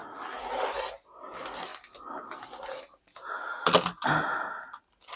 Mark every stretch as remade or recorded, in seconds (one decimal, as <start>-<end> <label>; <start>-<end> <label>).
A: 0.0-5.2 recorded